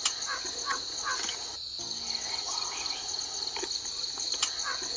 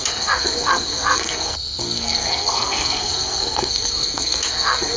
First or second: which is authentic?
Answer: first